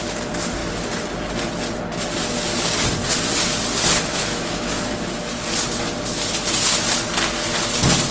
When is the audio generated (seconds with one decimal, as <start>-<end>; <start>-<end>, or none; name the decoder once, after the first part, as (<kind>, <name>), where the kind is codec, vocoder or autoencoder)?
4.1-4.8 (autoencoder, DAC-VAE)